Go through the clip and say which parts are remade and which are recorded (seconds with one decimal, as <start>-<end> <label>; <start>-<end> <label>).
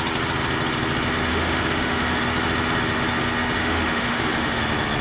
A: 0.0-1.3 recorded; 1.3-2.2 remade; 2.2-3.6 recorded; 3.6-4.6 remade; 4.6-5.0 recorded